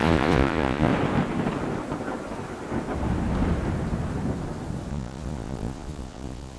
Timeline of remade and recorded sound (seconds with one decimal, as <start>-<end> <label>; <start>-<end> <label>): 0.0-0.9 remade; 0.9-4.9 recorded; 4.9-6.6 remade